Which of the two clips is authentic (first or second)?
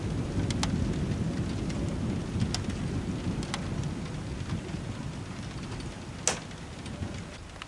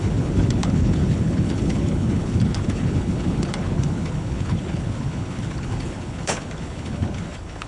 first